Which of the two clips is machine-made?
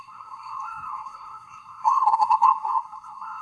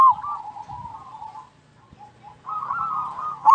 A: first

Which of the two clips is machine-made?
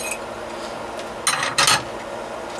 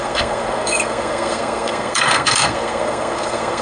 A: second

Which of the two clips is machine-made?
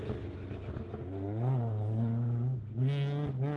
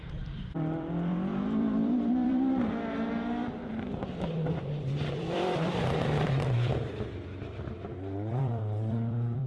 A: second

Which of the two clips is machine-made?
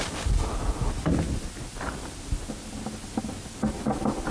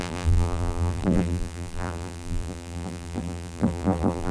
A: second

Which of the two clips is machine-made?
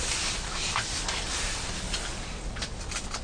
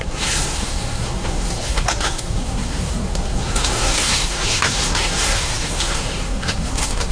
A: second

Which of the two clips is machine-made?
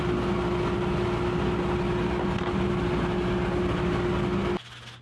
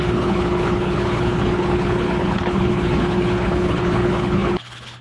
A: second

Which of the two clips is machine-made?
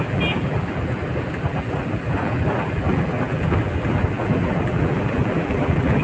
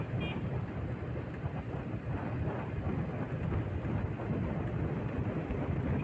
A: first